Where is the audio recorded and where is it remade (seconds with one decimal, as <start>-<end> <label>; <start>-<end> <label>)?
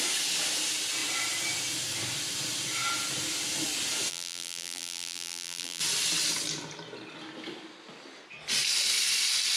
0.0-4.1 recorded; 4.1-5.8 remade; 5.8-9.6 recorded